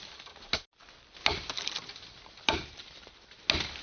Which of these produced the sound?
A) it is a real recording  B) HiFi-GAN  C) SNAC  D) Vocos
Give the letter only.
A